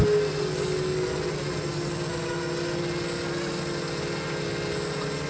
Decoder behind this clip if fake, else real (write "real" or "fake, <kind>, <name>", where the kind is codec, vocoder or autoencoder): real